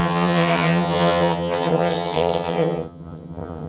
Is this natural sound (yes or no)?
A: no